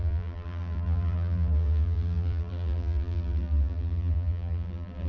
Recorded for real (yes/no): no